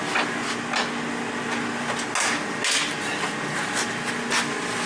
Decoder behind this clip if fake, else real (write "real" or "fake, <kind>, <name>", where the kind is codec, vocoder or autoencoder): real